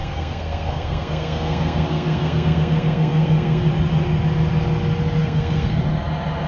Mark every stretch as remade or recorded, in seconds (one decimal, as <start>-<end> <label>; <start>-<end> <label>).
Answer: 0.0-3.7 remade; 3.7-5.2 recorded; 5.2-5.8 remade; 5.8-6.5 recorded